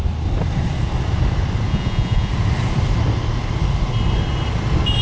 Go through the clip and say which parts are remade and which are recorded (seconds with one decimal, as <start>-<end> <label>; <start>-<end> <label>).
0.0-1.7 recorded; 1.7-2.3 remade; 2.3-5.0 recorded